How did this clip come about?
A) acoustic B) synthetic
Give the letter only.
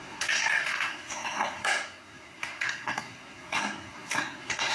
B